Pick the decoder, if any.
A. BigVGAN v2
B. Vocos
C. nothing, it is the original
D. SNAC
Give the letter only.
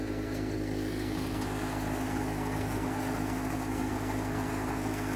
D